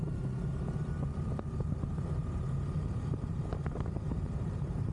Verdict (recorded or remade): remade